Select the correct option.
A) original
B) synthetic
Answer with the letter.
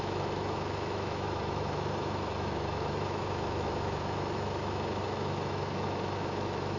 B